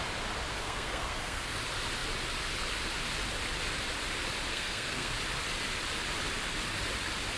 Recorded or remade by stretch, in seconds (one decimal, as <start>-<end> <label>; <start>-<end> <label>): 0.0-0.5 recorded; 0.5-1.5 remade; 1.5-4.5 recorded; 4.5-5.1 remade; 5.1-7.4 recorded